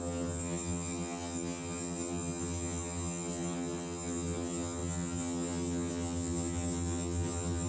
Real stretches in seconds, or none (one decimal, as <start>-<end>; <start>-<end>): none

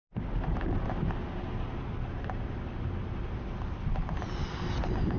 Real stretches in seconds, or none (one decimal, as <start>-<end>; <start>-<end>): 0.0-5.2

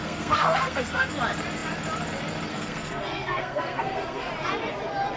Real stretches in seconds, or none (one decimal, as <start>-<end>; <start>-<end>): 1.2-2.5; 4.3-5.2

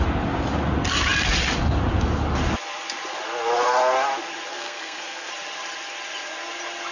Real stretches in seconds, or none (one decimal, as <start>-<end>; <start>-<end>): 0.0-4.5; 5.3-6.9

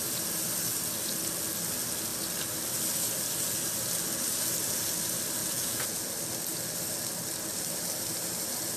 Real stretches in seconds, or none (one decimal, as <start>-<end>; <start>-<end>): 0.0-5.4; 6.0-8.8